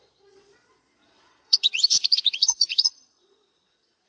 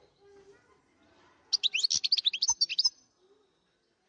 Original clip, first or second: second